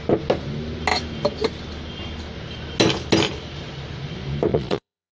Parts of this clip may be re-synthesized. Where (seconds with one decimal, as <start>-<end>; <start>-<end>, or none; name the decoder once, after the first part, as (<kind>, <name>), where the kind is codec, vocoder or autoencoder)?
4.5-5.1 (vocoder, Vocos)